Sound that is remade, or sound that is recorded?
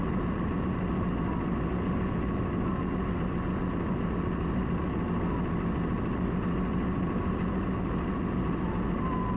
recorded